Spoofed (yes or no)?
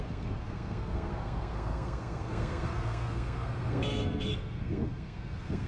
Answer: yes